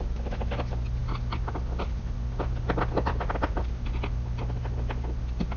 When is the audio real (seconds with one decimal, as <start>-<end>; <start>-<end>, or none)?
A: 0.0-5.6